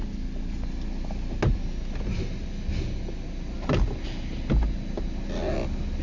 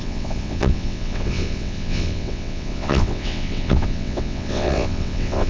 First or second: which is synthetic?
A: second